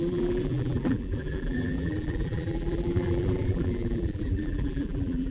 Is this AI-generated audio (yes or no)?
yes